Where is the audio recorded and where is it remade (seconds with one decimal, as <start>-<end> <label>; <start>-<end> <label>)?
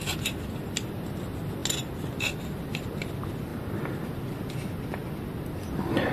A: 0.0-6.1 recorded